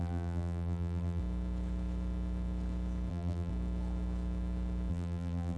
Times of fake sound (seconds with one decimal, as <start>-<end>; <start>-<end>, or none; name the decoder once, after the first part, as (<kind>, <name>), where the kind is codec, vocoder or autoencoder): 0.0-1.2 (vocoder, BigVGAN v2); 3.1-3.5; 4.9-5.6